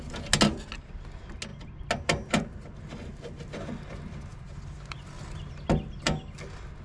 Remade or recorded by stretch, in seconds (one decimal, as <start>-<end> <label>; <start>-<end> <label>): 0.0-6.8 recorded